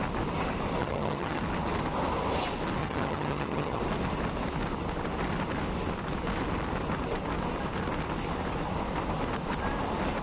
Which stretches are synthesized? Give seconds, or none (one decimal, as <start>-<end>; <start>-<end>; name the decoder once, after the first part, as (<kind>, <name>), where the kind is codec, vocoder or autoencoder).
0.8-1.4 (vocoder, HiFi-GAN); 2.8-3.8